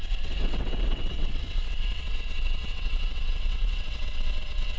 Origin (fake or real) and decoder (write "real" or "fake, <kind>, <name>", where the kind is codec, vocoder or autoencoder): fake, vocoder, WaveNeXt